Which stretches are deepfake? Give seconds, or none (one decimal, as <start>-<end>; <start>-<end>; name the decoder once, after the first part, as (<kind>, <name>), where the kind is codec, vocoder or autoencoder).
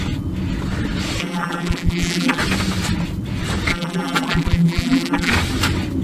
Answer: 1.2-2.4 (vocoder, BigVGAN v2); 3.7-5.3